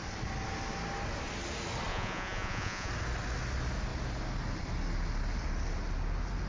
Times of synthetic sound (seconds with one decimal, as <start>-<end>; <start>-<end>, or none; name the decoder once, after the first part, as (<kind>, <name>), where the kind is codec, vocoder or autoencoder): 1.9-2.9 (vocoder, Vocos)